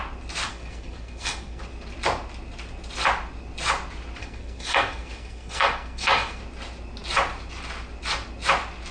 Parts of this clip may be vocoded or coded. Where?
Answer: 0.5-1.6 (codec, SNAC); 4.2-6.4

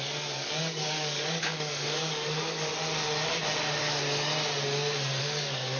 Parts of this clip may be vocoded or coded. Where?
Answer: 0.0-2.7 (codec, DAC); 3.8-4.3; 5.2-5.8

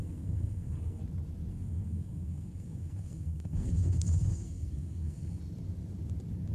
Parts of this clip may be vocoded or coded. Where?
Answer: 0.0-1.0 (codec, SNAC); 1.5-5.4

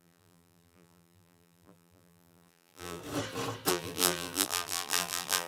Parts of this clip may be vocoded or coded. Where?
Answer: 0.0-3.0 (vocoder, BigVGAN v2); 3.7-5.5